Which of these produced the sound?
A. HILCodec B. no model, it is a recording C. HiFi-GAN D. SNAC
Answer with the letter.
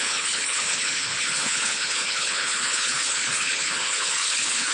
A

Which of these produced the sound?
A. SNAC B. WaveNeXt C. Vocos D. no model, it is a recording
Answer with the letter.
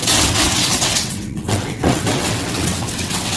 B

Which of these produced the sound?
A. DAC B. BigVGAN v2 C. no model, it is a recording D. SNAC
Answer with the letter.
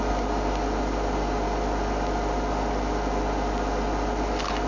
C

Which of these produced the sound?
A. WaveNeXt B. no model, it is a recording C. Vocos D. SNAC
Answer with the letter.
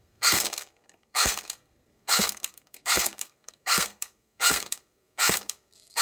D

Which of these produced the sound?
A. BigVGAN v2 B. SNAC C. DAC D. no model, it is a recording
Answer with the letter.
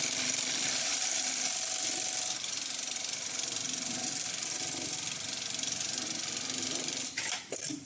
A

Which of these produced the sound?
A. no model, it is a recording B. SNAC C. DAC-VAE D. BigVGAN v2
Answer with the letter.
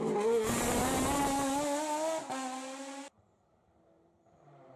A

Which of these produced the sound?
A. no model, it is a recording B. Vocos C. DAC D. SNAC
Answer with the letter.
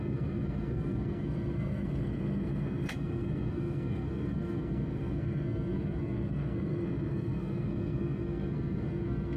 D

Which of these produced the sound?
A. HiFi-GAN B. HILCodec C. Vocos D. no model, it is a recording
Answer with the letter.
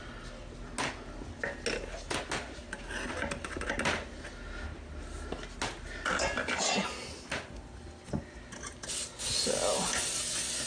D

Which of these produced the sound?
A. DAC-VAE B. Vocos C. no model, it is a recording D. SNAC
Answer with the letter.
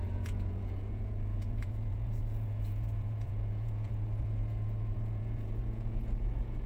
B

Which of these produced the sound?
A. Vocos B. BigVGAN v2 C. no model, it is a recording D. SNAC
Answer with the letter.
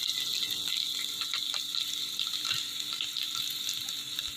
C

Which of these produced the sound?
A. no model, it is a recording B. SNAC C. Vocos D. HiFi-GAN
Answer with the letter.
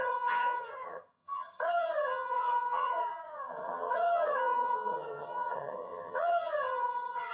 D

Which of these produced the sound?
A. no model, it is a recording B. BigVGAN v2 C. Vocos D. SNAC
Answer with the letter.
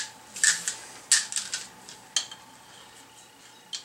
A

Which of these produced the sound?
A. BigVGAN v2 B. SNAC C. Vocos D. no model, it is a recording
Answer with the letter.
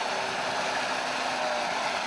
D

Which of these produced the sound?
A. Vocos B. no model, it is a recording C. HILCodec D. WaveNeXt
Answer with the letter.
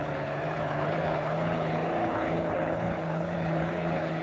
C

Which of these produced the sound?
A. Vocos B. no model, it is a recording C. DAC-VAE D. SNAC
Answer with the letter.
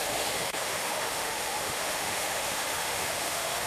C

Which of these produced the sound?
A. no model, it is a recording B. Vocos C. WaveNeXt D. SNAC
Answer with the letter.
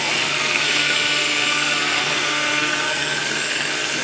D